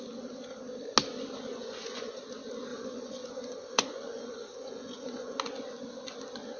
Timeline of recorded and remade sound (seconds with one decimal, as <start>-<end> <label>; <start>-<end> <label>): 0.0-1.5 recorded; 1.5-2.2 remade; 2.2-2.7 recorded; 2.7-5.4 remade; 5.4-6.6 recorded